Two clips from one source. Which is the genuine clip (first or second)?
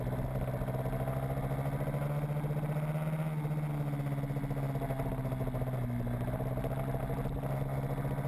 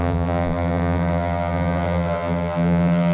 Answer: first